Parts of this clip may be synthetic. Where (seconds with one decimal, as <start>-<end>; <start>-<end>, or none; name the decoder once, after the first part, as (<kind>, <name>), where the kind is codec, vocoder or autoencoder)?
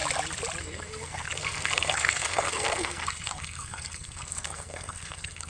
0.6-5.5 (codec, SNAC)